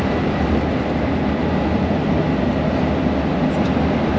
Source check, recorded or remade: recorded